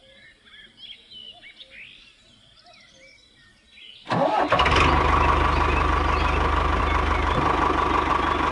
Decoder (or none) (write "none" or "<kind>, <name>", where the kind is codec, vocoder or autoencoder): none